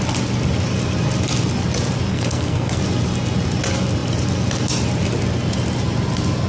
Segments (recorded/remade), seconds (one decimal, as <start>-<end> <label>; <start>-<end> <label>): 0.0-2.1 recorded; 2.1-2.8 remade; 2.8-6.5 recorded